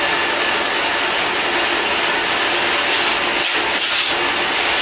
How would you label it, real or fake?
real